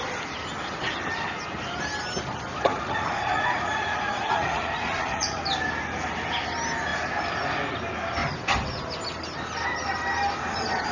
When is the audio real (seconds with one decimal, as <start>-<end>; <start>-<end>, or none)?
0.0-2.7; 5.4-10.9

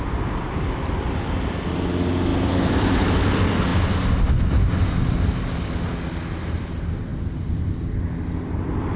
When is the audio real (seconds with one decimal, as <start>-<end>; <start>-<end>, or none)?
0.0-2.3; 2.9-7.1; 8.0-9.0

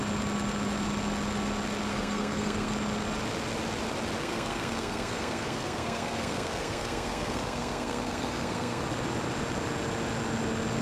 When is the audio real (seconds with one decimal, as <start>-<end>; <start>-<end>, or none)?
0.0-1.9; 2.7-4.2; 8.8-10.8

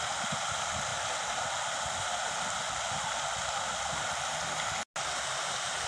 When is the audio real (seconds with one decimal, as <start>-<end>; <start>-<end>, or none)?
0.0-5.9

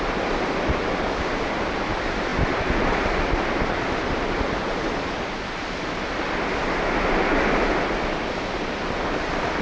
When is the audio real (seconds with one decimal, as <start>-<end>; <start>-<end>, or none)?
0.0-9.6